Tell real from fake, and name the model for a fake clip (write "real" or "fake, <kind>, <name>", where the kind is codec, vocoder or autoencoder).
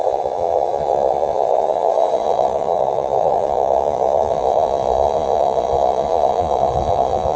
fake, vocoder, Vocos